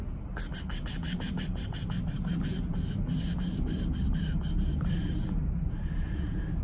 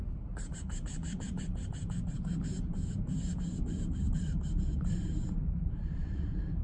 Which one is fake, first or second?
second